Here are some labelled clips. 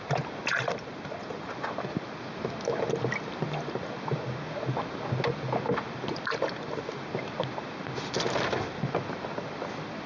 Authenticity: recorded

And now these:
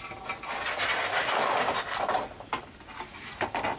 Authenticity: recorded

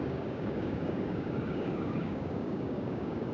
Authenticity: remade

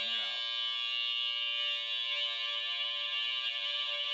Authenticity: recorded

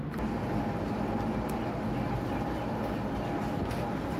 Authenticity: recorded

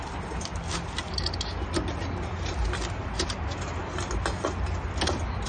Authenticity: recorded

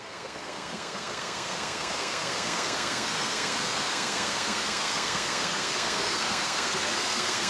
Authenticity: remade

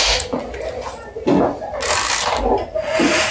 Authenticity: recorded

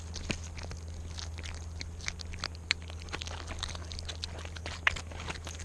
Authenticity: recorded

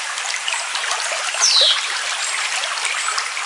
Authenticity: recorded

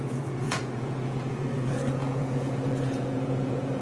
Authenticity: remade